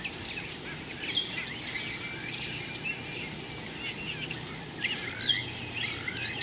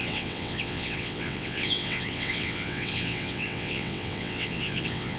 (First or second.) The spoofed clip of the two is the second